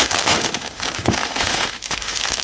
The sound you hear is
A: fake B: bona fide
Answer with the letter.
A